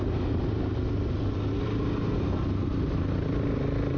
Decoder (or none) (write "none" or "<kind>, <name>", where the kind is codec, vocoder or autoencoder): none